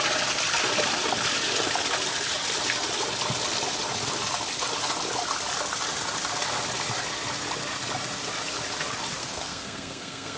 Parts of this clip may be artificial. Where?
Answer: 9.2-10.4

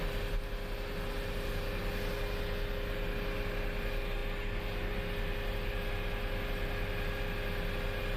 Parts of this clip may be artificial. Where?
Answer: none

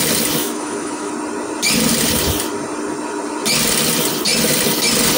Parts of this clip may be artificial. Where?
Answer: 0.4-1.1

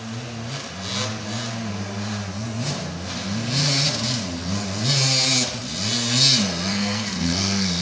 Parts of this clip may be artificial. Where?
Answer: 6.7-7.8

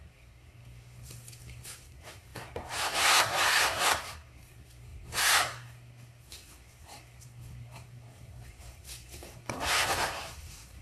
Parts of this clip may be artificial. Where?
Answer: 0.0-10.8

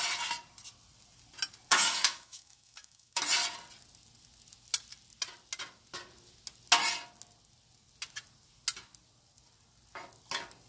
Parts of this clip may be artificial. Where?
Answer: 1.7-3.2